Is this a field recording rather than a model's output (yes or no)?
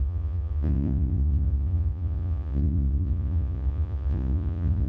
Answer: no